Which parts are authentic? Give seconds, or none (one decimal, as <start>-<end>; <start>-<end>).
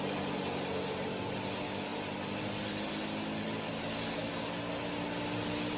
0.0-5.8